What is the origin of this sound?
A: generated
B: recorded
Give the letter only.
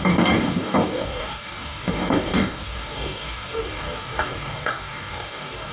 A